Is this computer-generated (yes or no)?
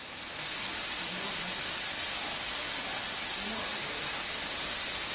no